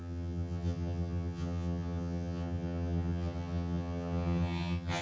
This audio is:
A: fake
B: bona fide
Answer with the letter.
A